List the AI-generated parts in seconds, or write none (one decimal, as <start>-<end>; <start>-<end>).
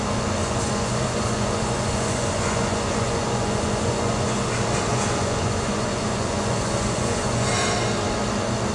0.4-4.5; 4.9-7.5